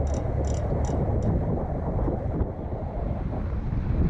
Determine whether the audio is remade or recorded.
recorded